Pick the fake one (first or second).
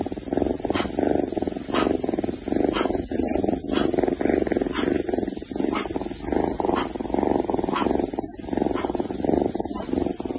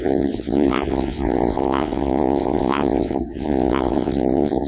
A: second